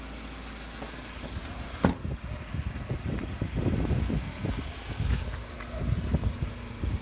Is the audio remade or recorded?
recorded